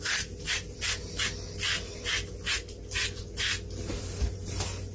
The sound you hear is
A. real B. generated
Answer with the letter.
A